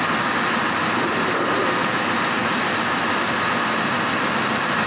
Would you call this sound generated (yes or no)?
no